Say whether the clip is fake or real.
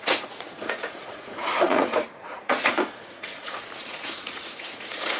fake